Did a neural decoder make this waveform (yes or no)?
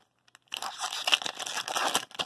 no